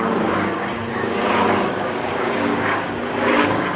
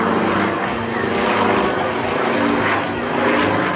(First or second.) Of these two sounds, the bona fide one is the second